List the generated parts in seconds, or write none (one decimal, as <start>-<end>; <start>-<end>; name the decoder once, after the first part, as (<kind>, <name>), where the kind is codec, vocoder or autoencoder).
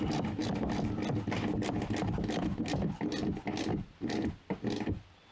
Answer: none